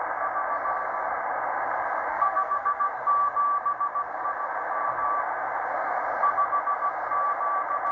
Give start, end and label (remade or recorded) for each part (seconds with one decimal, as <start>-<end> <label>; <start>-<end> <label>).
0.0-2.1 recorded; 2.1-2.9 remade; 2.9-7.9 recorded